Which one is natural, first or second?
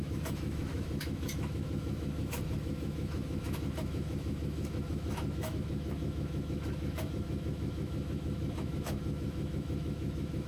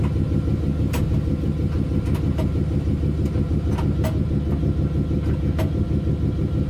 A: second